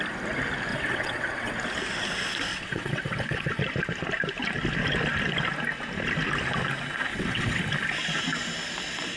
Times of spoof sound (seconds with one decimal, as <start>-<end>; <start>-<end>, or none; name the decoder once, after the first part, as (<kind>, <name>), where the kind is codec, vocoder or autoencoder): 0.7-1.5 (vocoder, WaveNeXt); 2.5-3.6; 7.1-7.6

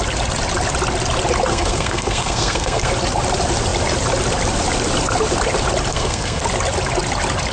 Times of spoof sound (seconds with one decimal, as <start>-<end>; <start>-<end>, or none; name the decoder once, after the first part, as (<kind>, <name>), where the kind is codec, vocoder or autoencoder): 1.5-2.9 (codec, SNAC); 5.9-6.4